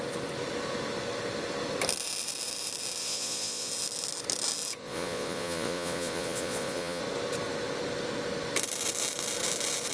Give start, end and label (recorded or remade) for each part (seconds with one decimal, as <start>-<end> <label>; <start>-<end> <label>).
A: 0.0-3.0 recorded; 3.0-3.7 remade; 3.7-4.8 recorded; 4.8-7.0 remade; 7.0-9.9 recorded